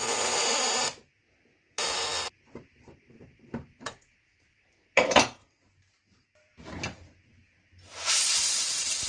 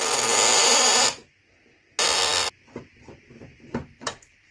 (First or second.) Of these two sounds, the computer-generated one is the first